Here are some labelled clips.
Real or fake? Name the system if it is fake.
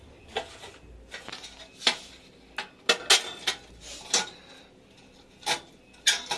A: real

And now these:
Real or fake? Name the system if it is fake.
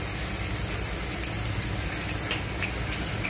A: real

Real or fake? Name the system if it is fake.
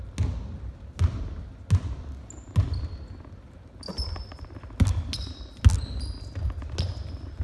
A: real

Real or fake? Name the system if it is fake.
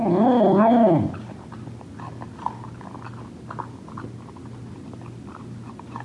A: real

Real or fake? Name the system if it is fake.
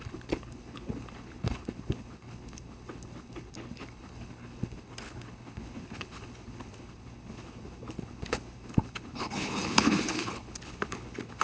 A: fake, codec, HILCodec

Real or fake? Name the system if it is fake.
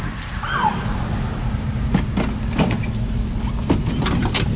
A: real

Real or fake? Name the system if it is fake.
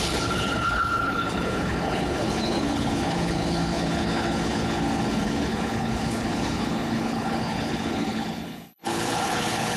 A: fake, codec, HILCodec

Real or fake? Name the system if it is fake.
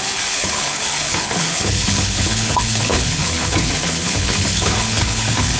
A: fake, codec, HILCodec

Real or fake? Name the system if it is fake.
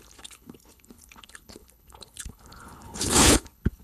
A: fake, codec, HILCodec